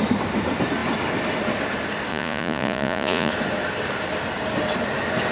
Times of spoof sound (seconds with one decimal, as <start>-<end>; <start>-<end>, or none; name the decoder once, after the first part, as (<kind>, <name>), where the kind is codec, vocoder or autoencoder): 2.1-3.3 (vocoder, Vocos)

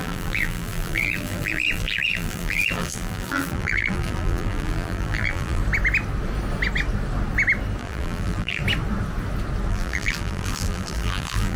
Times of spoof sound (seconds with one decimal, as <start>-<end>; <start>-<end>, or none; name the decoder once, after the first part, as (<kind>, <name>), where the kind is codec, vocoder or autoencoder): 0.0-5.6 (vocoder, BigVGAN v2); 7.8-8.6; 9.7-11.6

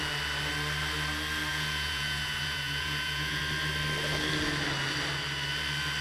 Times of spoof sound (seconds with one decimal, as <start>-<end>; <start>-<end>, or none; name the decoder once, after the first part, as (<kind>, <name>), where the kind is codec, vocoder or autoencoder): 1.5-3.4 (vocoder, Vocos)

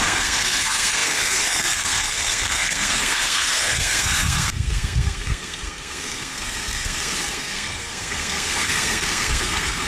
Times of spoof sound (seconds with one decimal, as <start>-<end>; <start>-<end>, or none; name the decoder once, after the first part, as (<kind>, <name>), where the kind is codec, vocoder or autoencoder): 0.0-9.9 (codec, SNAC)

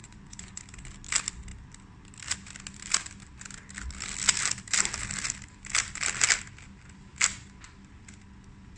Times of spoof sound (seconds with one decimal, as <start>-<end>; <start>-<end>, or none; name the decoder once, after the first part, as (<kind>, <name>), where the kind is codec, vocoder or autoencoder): 0.0-0.6 (vocoder, Vocos)